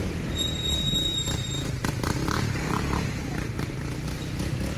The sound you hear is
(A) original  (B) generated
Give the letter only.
B